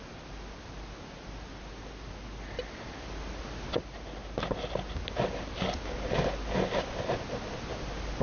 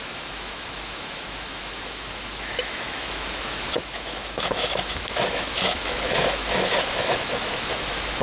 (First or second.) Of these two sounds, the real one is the first